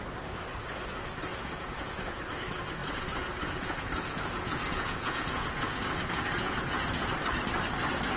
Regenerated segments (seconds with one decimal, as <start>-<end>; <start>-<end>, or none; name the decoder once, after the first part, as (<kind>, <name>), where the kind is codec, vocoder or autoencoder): 1.3-2.2 (vocoder, Vocos); 2.8-7.1